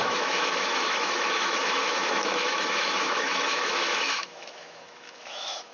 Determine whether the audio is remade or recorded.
remade